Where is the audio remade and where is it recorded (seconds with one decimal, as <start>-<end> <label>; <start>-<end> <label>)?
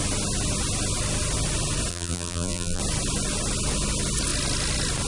0.0-1.9 recorded; 1.9-2.8 remade; 2.8-5.1 recorded